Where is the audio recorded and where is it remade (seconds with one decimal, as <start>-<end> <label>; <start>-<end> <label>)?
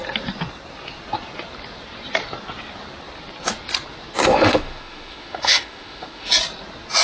0.0-4.3 recorded; 4.3-6.3 remade; 6.3-7.0 recorded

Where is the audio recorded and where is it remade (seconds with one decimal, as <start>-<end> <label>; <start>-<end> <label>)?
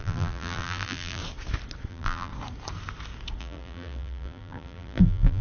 0.0-1.2 remade; 1.2-1.9 recorded; 1.9-2.3 remade; 2.3-3.4 recorded; 3.4-5.4 remade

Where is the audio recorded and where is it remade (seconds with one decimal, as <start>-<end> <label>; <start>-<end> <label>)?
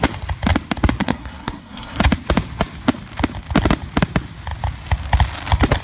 0.0-1.0 recorded; 1.0-2.0 remade; 2.0-5.8 recorded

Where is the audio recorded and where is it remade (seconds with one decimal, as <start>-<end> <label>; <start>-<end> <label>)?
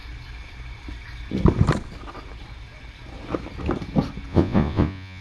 0.0-4.3 recorded; 4.3-5.2 remade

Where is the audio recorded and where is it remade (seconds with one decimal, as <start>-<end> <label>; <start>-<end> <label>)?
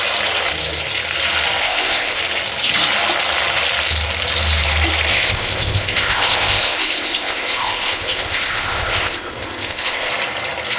0.0-1.6 recorded; 1.6-2.2 remade; 2.2-5.1 recorded; 5.1-10.1 remade; 10.1-10.8 recorded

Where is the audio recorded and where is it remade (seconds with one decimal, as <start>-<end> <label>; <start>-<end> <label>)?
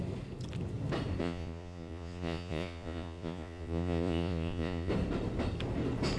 0.0-1.2 recorded; 1.2-4.9 remade; 4.9-6.2 recorded